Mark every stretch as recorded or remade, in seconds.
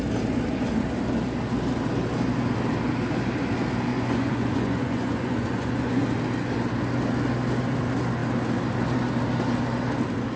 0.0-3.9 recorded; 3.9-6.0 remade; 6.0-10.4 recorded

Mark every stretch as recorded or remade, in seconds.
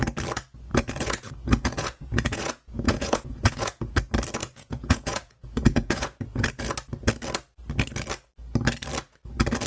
0.0-0.7 recorded; 0.7-3.9 remade; 3.9-4.4 recorded; 4.4-6.7 remade; 6.7-9.7 recorded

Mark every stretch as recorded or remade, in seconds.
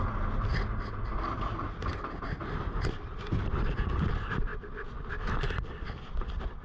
0.0-6.6 recorded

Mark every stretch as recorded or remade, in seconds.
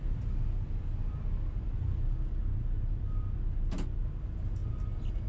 0.0-5.3 recorded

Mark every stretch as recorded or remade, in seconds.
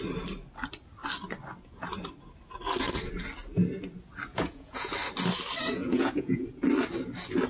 0.0-4.3 recorded; 4.3-4.9 remade; 4.9-5.6 recorded; 5.6-6.5 remade; 6.5-7.5 recorded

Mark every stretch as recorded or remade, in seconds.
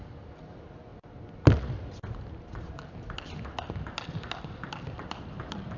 0.0-5.8 recorded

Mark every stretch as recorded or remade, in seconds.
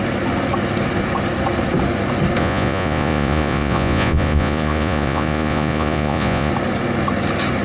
0.0-2.4 recorded; 2.4-6.5 remade; 6.5-7.6 recorded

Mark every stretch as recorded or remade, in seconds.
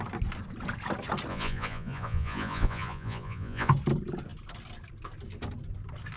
0.0-1.3 recorded; 1.3-3.7 remade; 3.7-6.2 recorded